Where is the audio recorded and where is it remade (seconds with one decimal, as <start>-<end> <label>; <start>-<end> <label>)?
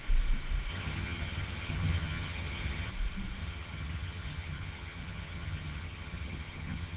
0.0-0.7 recorded; 0.7-2.9 remade; 2.9-3.4 recorded; 3.4-7.0 remade